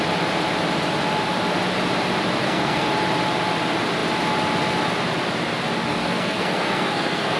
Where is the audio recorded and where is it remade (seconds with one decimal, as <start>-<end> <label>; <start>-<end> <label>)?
0.0-2.4 recorded; 2.4-2.9 remade; 2.9-5.9 recorded; 5.9-7.4 remade